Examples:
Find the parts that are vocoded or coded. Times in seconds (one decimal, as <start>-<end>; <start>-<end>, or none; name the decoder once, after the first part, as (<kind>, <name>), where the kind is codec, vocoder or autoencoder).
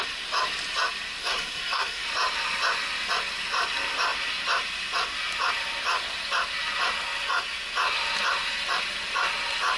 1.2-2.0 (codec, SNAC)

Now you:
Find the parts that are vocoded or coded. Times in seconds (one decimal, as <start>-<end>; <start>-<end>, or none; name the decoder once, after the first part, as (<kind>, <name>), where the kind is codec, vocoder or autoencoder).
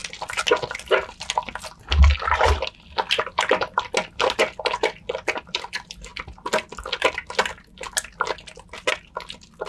none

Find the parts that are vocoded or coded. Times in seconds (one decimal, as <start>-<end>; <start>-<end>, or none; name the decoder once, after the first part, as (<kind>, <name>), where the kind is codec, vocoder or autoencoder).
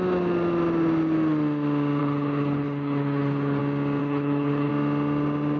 2.0-3.6 (codec, HILCodec); 4.0-4.7